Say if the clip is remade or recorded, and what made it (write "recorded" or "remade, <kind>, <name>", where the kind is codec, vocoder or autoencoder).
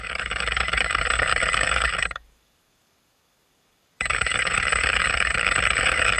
remade, codec, DAC